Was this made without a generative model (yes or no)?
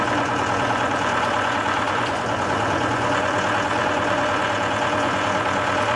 no